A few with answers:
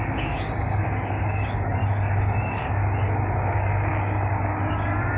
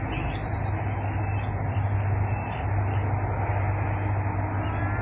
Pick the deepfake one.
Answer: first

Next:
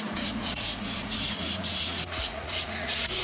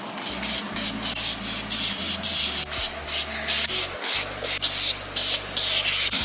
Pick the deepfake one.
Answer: first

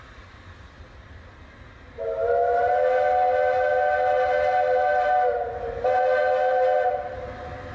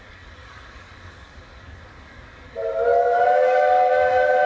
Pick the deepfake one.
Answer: second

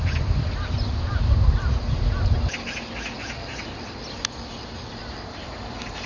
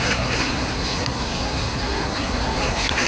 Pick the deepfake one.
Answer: second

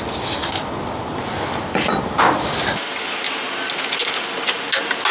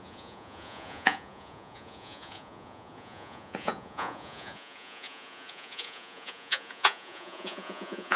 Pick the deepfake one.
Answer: second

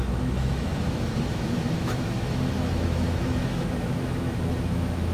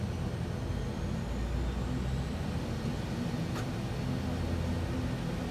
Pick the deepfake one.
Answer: first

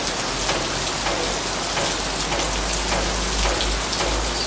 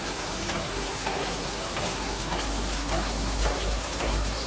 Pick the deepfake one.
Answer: second